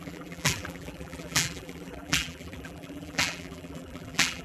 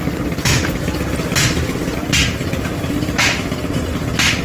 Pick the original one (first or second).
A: second